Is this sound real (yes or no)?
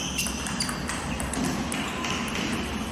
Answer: yes